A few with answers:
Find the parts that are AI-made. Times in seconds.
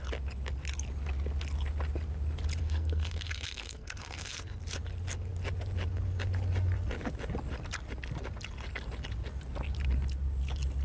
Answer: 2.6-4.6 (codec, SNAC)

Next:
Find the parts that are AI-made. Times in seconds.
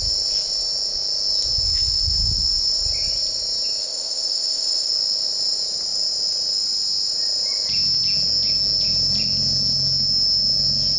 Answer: 3.8-4.9 (codec, ZipCodec)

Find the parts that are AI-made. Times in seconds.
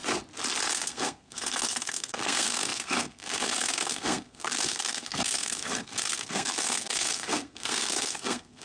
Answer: 0.7-8.6 (codec, SNAC)